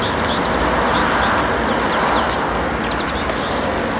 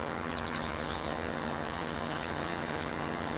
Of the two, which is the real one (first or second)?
first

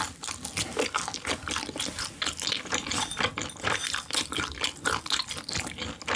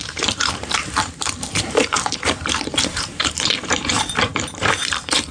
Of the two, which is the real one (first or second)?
first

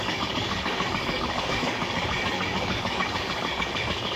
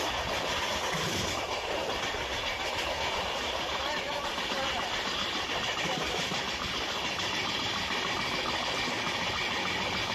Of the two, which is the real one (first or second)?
second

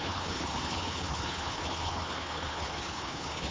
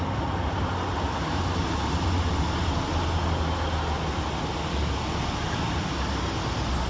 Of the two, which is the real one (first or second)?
second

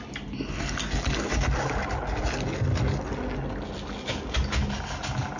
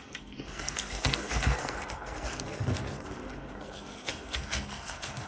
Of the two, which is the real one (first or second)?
first